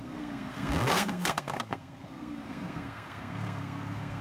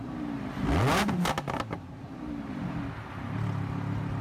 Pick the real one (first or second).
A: second